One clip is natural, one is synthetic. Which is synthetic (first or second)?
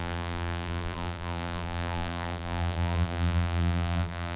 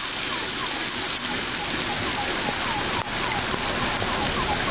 first